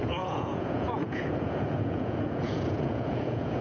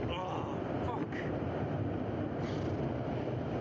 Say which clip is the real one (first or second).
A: second